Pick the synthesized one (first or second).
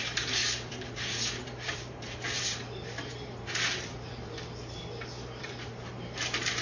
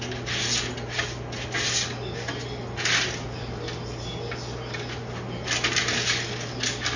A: first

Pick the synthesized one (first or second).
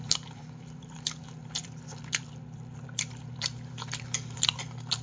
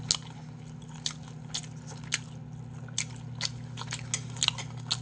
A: first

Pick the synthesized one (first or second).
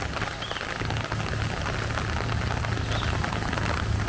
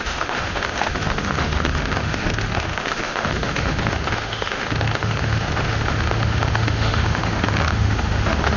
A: second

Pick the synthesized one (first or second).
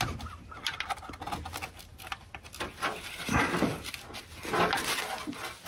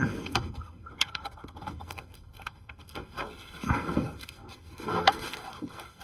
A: second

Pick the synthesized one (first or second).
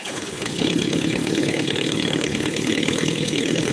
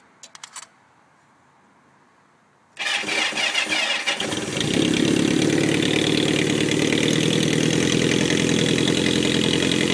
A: first